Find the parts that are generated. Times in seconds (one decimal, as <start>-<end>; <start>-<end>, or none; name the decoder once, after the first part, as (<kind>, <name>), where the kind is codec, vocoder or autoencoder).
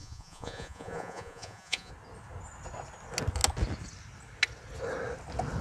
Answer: 0.0-1.9 (vocoder, Vocos)